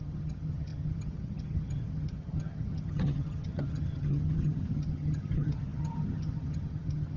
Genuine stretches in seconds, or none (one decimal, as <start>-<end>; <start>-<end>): none